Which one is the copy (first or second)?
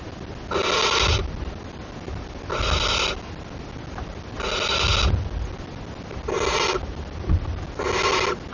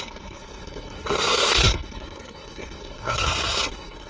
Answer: second